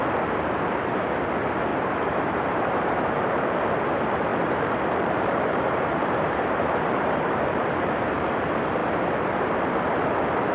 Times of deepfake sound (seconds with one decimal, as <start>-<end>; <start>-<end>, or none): 1.7-3.6; 4.3-7.4